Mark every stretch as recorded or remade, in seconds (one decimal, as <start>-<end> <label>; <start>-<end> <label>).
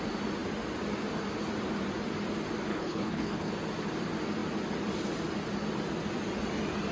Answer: 0.0-2.7 recorded; 2.7-3.5 remade; 3.5-6.9 recorded